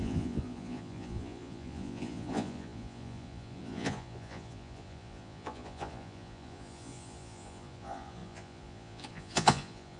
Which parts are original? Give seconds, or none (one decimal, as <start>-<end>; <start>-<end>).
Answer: none